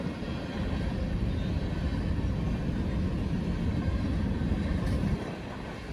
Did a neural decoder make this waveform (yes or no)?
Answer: no